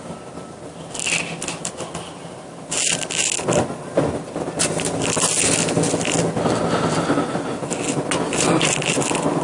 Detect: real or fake real